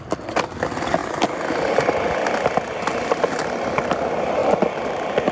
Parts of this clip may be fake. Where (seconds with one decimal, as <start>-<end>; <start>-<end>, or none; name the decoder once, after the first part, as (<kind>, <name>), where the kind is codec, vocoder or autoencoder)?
none